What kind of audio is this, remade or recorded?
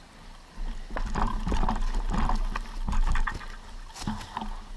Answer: recorded